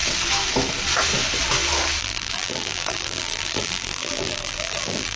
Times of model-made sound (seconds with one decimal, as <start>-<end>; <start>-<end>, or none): 2.0-5.2

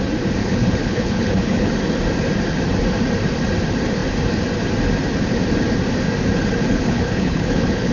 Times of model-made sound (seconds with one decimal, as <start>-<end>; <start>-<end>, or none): 0.4-1.7; 6.7-7.9